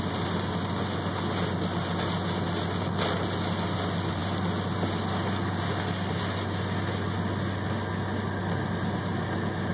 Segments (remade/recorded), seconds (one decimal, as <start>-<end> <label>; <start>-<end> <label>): 0.0-9.7 recorded